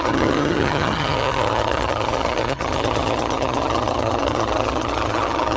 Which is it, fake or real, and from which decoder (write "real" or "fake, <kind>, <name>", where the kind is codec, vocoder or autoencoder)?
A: fake, vocoder, HiFi-GAN